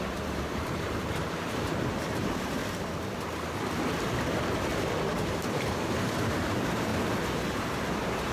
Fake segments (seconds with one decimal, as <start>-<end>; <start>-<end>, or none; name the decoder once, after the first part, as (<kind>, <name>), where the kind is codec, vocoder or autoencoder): 0.0-2.6 (vocoder, BigVGAN v2); 5.5-6.9; 7.6-8.3